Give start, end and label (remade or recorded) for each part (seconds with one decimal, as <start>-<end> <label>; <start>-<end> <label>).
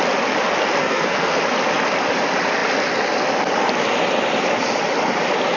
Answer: 0.0-0.8 recorded; 0.8-1.4 remade; 1.4-5.6 recorded